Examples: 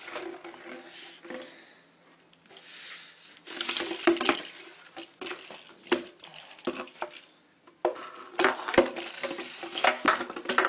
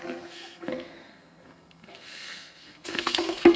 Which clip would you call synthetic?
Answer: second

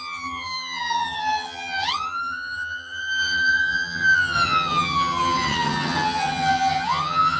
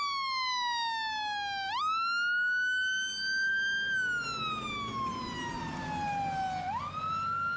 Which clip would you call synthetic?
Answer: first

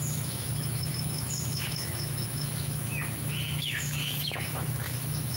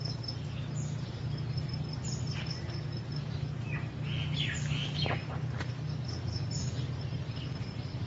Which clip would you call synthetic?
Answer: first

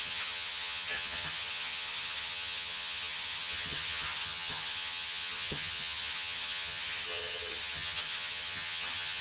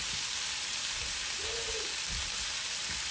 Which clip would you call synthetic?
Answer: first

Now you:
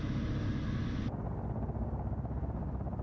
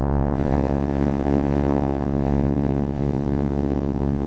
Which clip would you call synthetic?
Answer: second